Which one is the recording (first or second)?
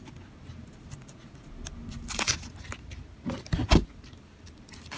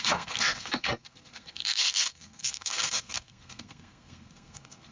first